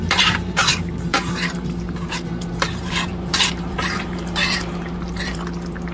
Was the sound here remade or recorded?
remade